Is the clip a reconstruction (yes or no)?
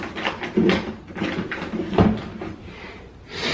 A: no